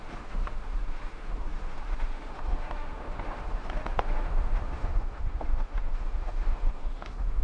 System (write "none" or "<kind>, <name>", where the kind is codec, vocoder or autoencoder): autoencoder, DAC-VAE